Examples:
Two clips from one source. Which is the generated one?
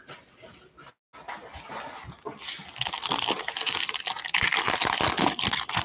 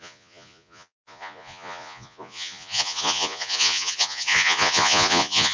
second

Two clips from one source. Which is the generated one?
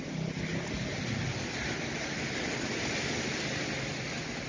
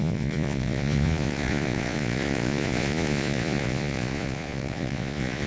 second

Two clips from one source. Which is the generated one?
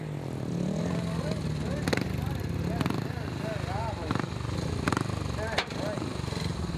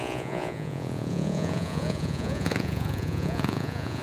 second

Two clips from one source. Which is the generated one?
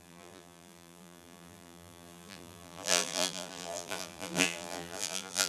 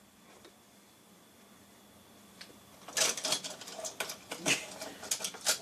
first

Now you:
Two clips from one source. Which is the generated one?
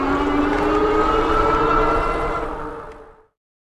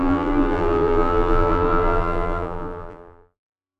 second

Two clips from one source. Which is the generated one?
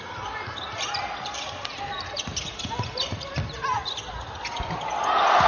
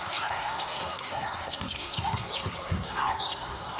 second